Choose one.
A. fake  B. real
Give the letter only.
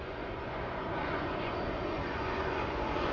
A